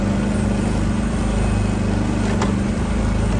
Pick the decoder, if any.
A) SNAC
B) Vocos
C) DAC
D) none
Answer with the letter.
D